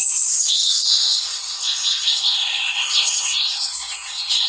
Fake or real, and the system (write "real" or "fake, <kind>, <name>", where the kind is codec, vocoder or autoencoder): fake, codec, SNAC